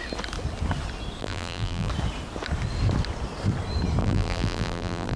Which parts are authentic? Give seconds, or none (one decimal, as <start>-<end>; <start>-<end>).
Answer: 0.0-1.2; 1.9-4.0